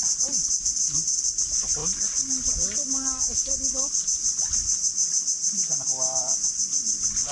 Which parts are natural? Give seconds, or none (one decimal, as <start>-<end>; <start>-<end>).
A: 0.0-7.3